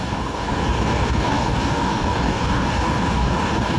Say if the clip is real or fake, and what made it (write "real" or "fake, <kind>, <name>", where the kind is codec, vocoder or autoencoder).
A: fake, codec, DAC